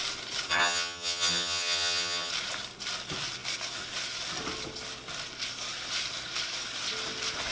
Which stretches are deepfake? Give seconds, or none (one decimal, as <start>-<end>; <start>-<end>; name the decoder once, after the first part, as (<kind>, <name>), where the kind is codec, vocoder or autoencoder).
0.5-2.3 (vocoder, HiFi-GAN)